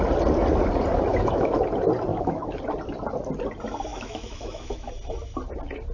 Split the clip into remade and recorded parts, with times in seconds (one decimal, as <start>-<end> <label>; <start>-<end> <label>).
0.0-1.1 recorded; 1.1-1.6 remade; 1.6-2.1 recorded; 2.1-2.6 remade; 2.6-3.9 recorded; 3.9-4.9 remade; 4.9-5.9 recorded